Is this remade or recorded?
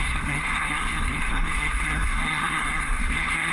remade